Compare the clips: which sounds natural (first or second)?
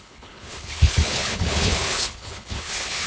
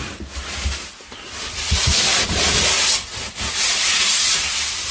second